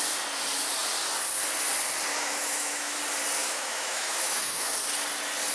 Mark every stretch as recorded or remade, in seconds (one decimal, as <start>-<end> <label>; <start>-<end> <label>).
0.0-2.1 recorded; 2.1-3.0 remade; 3.0-3.4 recorded; 3.4-4.7 remade; 4.7-5.5 recorded